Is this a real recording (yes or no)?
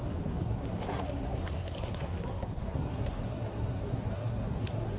no